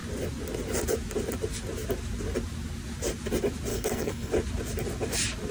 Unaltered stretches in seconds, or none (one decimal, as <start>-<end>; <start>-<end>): 0.0-3.7; 4.3-5.5